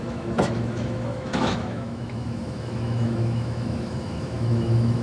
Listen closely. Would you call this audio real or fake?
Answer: fake